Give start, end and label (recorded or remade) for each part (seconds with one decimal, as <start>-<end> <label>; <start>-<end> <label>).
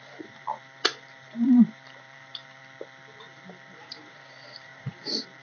0.0-2.6 remade; 2.6-3.2 recorded; 3.2-5.4 remade